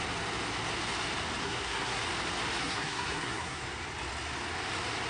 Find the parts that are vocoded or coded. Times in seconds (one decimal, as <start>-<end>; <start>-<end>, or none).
1.4-2.0; 2.6-3.6